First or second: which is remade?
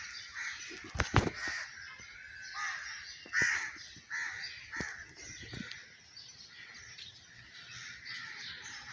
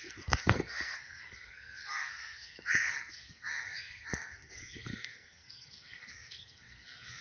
second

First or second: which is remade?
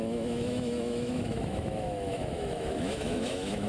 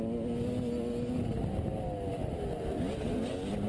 first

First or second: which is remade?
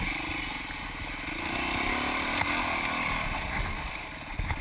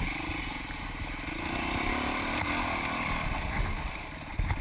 second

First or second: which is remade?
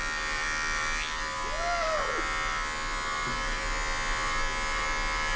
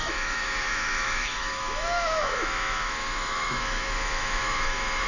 second